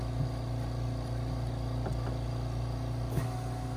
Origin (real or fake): real